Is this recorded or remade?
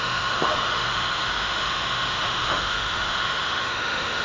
remade